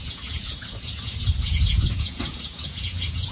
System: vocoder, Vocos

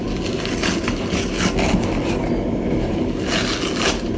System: none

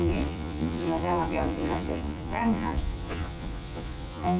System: vocoder, Vocos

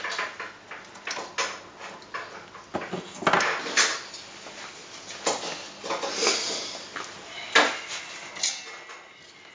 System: none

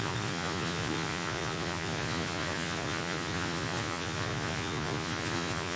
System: vocoder, Vocos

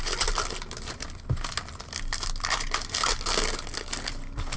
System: none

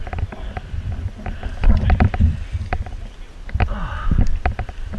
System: none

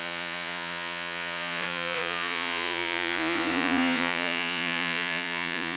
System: vocoder, Vocos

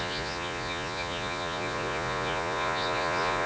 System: vocoder, Vocos